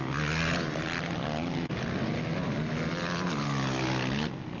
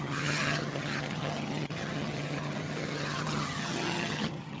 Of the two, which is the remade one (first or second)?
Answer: second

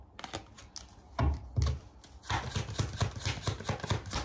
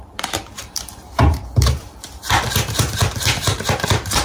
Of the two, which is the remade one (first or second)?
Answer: second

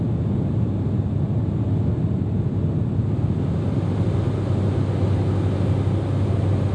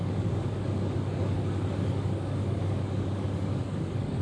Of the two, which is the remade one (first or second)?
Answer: second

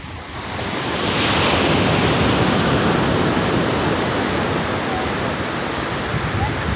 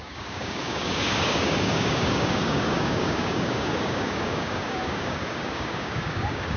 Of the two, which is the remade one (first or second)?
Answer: second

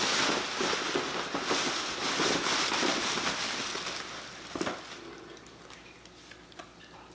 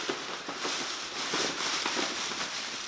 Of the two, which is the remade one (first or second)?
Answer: second